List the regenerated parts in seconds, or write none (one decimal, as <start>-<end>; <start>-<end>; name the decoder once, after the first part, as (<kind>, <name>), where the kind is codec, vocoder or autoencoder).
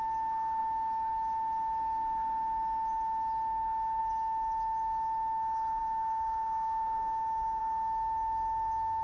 5.8-7.6 (codec, DAC)